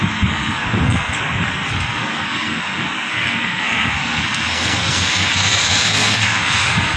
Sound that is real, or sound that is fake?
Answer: fake